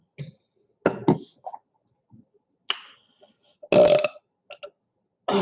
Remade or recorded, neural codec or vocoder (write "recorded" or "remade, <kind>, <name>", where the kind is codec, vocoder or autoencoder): recorded